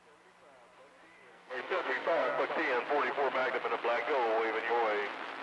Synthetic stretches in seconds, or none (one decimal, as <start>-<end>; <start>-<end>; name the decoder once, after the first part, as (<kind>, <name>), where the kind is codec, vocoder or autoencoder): 1.2-2.4 (codec, SNAC)